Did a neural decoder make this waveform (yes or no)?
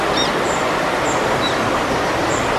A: yes